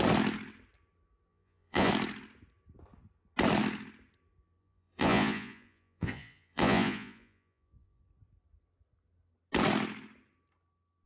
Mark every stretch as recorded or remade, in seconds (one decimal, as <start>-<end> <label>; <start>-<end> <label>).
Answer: 0.0-1.3 recorded; 1.3-1.9 remade; 1.9-4.6 recorded; 4.6-8.0 remade; 8.0-11.1 recorded